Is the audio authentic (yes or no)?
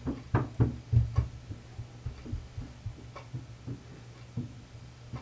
yes